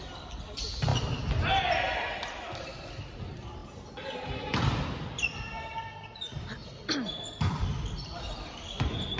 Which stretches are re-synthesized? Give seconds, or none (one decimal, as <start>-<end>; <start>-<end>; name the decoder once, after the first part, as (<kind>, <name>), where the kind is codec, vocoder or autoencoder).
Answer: 0.9-3.2 (vocoder, BigVGAN v2); 6.6-9.2